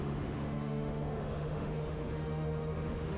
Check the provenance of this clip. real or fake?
fake